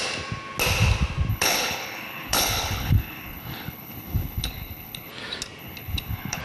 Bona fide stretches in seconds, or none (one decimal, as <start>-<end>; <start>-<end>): 0.0-1.3; 5.1-5.6